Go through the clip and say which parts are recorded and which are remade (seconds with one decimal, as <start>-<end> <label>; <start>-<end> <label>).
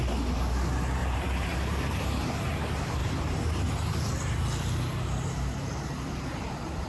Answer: 0.0-1.0 recorded; 1.0-2.5 remade; 2.5-3.0 recorded; 3.0-3.6 remade; 3.6-6.9 recorded